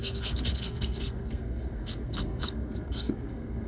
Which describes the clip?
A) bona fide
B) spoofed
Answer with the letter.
B